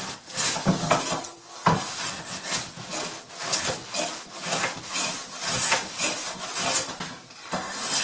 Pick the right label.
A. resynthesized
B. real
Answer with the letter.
B